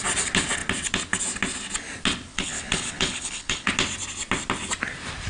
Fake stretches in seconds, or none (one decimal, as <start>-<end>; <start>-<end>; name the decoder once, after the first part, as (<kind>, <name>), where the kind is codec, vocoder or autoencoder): 2.3-3.7 (codec, HILCodec)